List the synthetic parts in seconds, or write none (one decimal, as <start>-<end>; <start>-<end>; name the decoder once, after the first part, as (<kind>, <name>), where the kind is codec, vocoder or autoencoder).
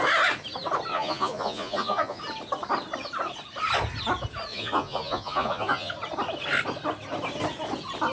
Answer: 0.9-2.2 (vocoder, Vocos); 4.5-5.9